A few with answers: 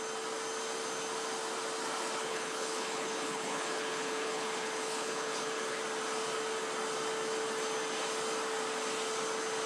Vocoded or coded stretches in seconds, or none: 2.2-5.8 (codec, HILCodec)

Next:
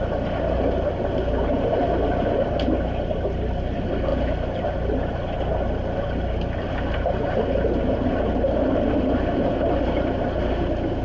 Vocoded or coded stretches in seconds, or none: none